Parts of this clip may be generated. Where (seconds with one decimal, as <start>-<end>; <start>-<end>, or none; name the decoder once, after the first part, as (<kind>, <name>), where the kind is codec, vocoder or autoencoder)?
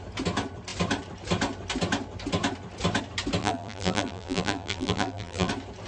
3.4-5.5 (vocoder, BigVGAN v2)